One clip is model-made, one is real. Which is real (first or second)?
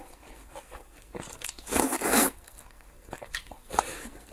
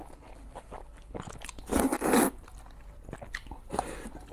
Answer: second